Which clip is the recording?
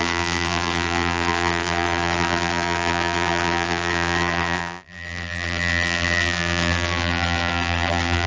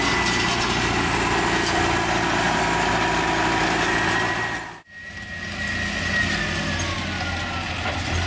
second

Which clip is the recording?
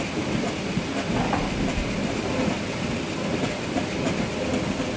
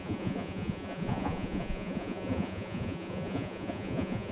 first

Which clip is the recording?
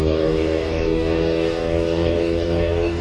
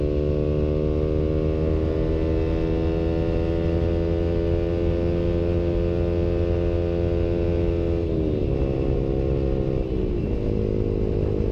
second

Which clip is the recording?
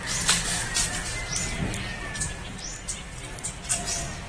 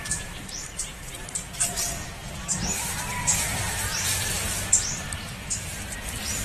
first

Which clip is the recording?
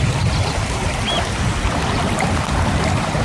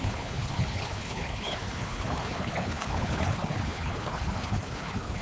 first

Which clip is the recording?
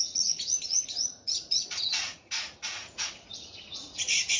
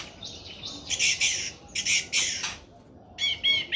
second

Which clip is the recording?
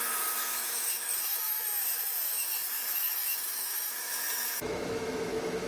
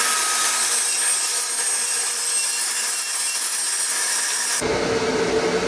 second